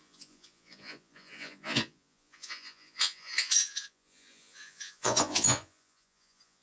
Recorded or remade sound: remade